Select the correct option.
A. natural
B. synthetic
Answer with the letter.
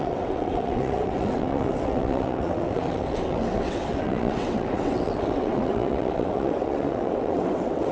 B